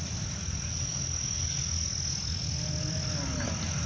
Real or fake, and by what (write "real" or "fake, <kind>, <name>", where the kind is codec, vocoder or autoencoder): real